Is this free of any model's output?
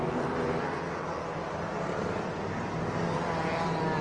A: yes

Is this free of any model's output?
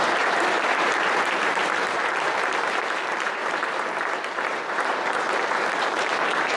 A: no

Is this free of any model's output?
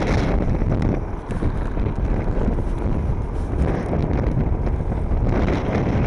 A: yes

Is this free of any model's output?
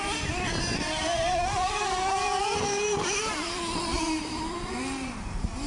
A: no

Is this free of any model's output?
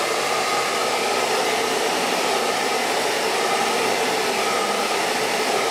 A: no